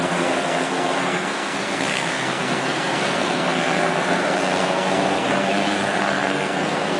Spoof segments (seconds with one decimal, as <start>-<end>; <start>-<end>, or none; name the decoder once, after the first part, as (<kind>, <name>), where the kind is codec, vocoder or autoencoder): 0.0-7.0 (codec, SNAC)